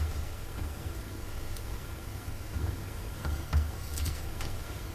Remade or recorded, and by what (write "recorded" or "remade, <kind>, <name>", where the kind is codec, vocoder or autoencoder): remade, codec, SNAC